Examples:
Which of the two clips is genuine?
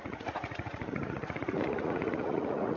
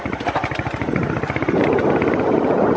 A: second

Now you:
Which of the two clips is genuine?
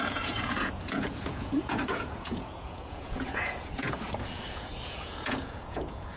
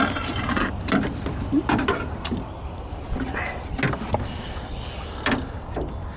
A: second